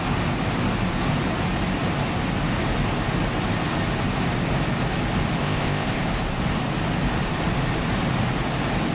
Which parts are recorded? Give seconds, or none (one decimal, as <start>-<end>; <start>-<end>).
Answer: 0.0-5.4; 6.0-8.9